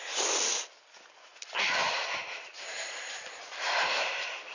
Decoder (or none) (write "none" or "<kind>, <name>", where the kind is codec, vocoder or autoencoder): none